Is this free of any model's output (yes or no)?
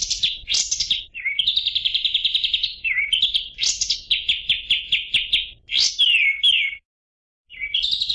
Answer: yes